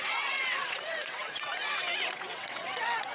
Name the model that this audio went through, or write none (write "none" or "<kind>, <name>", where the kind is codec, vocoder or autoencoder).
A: vocoder, WaveNeXt